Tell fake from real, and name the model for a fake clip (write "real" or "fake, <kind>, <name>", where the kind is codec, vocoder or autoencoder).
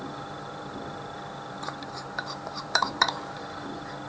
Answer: fake, vocoder, BigVGAN v2